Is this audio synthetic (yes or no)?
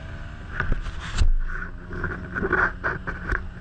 no